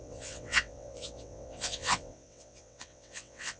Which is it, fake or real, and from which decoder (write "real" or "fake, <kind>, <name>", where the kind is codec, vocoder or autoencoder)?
fake, vocoder, WaveNeXt